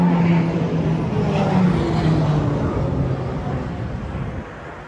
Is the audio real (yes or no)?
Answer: yes